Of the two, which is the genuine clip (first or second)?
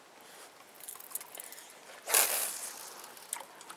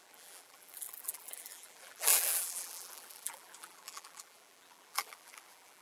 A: first